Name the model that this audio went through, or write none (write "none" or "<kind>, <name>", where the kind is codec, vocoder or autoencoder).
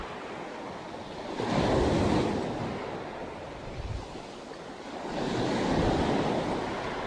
none